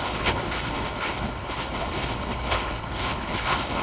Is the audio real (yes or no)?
no